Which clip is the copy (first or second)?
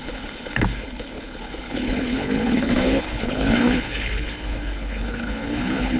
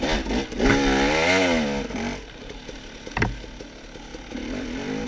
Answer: first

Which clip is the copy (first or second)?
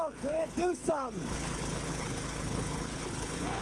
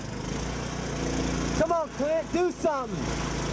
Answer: first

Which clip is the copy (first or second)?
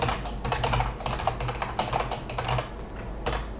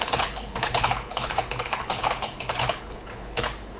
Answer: second